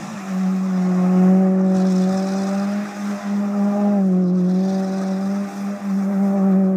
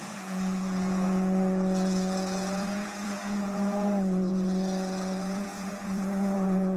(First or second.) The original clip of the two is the first